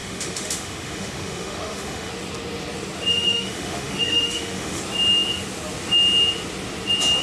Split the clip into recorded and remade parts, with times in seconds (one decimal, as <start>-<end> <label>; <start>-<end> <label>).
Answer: 0.0-2.1 remade; 2.1-3.1 recorded; 3.1-4.8 remade; 4.8-7.2 recorded